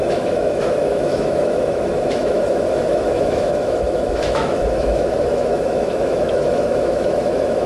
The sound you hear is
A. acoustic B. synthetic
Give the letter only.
B